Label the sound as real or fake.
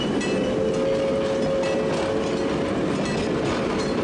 real